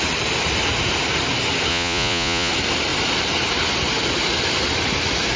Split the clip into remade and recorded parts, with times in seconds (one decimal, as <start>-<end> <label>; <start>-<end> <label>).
0.0-1.7 recorded; 1.7-2.5 remade; 2.5-5.4 recorded